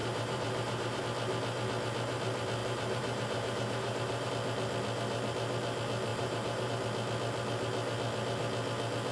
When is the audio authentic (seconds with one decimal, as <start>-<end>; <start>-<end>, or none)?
1.0-2.6; 4.3-6.1; 6.7-9.1